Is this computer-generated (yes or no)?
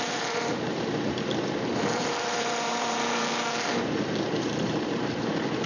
yes